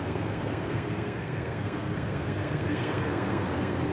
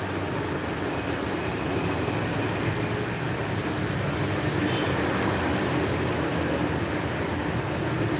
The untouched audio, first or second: second